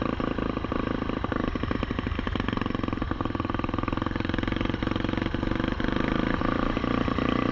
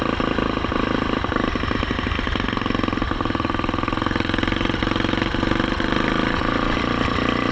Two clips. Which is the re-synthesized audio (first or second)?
first